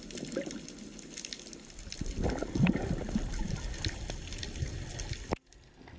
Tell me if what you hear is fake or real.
real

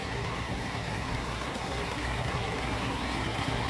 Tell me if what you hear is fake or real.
fake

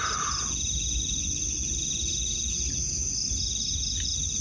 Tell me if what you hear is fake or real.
real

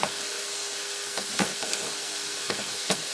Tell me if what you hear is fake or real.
fake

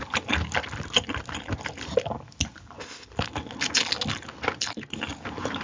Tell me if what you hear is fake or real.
real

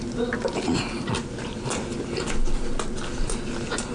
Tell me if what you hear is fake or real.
real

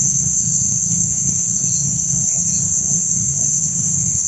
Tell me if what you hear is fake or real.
fake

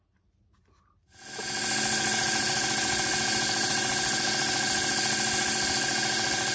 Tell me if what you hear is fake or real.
real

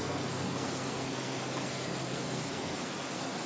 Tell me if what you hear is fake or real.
fake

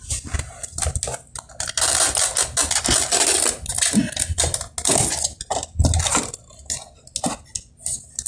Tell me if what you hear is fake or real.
real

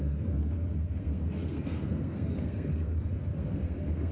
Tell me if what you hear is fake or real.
fake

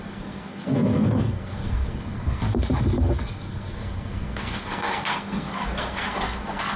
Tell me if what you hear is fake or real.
fake